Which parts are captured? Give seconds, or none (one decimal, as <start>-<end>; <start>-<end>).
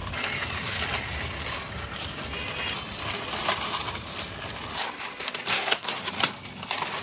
0.0-5.5; 6.0-7.0